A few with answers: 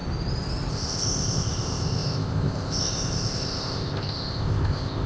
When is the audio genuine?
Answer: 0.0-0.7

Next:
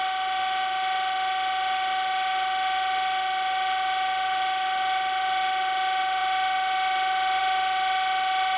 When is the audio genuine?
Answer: 0.0-8.6